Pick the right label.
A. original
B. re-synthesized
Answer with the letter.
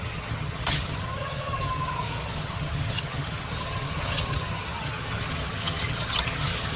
B